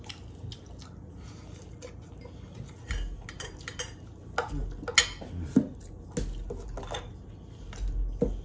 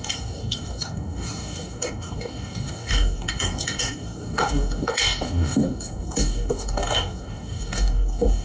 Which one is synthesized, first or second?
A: second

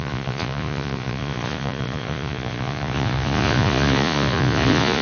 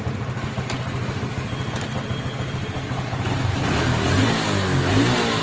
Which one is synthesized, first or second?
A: first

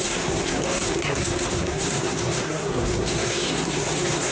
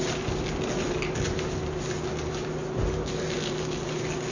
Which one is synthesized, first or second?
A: first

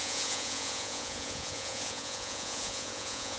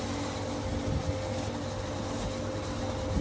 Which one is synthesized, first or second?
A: first